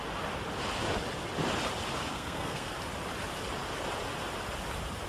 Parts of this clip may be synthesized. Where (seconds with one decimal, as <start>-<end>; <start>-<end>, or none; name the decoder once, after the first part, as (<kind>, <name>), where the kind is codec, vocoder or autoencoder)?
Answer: 2.1-2.7 (codec, SNAC)